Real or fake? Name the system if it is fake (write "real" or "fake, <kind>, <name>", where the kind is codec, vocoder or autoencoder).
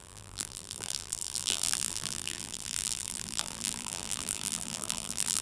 fake, vocoder, BigVGAN v2